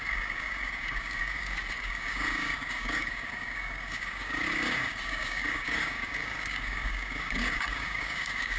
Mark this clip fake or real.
fake